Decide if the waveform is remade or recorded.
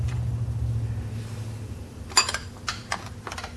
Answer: recorded